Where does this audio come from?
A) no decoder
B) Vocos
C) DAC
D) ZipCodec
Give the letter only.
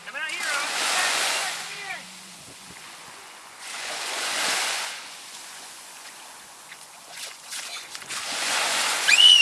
B